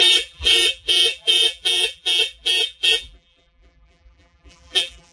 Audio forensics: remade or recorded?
remade